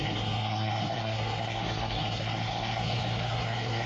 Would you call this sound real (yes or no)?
no